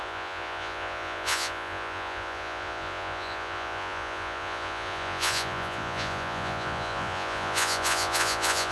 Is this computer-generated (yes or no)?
yes